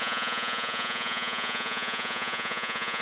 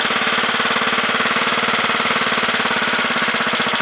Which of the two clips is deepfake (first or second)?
first